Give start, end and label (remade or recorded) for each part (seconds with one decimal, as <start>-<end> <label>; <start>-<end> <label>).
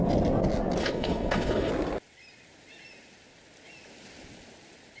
0.0-0.8 recorded; 0.8-1.7 remade; 1.7-5.0 recorded